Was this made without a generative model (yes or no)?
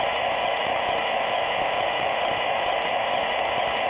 no